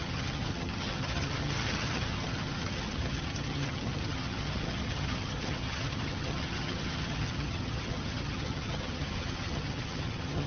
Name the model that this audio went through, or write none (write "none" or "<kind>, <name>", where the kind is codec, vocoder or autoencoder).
vocoder, HiFi-GAN